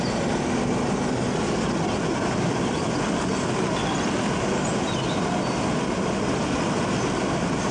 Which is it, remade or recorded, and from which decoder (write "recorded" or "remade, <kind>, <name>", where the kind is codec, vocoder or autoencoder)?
recorded